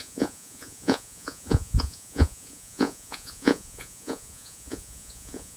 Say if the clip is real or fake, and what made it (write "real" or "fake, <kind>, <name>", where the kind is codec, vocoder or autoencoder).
fake, vocoder, Vocos